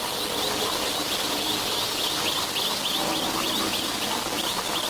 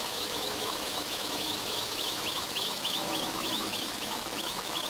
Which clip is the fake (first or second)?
second